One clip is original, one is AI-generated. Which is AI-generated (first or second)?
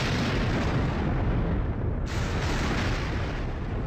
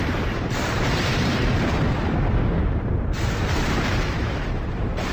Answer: second